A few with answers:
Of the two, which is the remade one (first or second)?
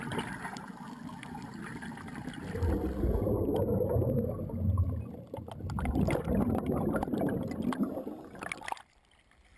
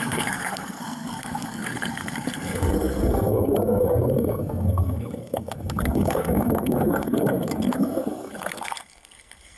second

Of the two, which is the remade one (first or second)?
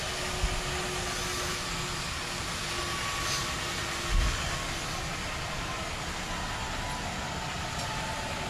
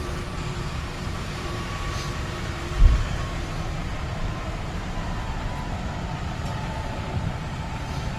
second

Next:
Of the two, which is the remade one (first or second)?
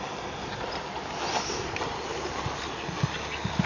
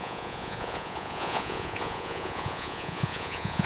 second